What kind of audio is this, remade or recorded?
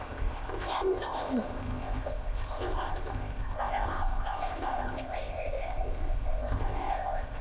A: remade